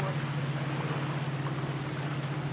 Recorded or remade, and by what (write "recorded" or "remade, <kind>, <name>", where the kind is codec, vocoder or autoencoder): recorded